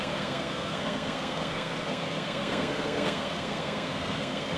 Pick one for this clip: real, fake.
fake